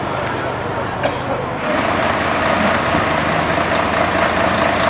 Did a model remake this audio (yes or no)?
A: no